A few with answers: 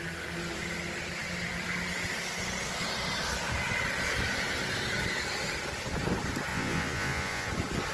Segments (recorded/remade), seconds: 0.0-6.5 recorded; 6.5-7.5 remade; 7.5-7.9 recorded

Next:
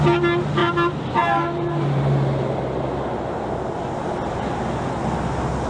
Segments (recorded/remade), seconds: 0.0-0.6 recorded; 0.6-2.0 remade; 2.0-5.7 recorded

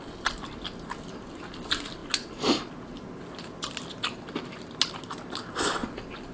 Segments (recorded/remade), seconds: 0.0-6.3 recorded

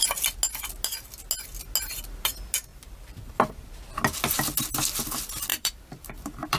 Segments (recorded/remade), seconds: 0.0-2.7 recorded; 2.7-3.5 remade; 3.5-5.5 recorded; 5.5-6.6 remade